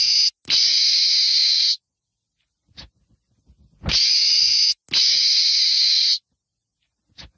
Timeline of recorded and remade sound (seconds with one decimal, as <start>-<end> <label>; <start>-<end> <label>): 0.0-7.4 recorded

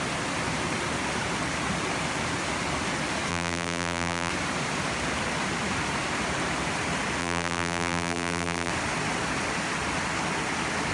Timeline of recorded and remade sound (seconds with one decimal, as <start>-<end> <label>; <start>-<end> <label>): 0.0-3.3 recorded; 3.3-4.3 remade; 4.3-7.2 recorded; 7.2-8.7 remade; 8.7-10.9 recorded

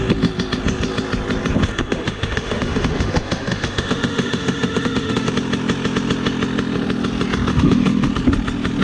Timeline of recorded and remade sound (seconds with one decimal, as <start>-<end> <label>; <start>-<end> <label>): 0.0-1.6 recorded; 1.6-5.3 remade; 5.3-7.5 recorded; 7.5-8.1 remade; 8.1-8.8 recorded

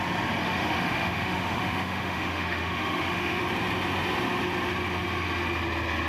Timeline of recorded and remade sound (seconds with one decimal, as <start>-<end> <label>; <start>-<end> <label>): 0.0-0.4 recorded; 0.4-3.4 remade; 3.4-6.1 recorded

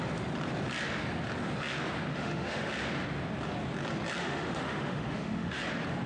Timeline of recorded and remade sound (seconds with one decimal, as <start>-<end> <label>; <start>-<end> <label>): 0.0-2.1 recorded; 2.1-2.7 remade; 2.7-4.2 recorded; 4.2-5.6 remade; 5.6-6.1 recorded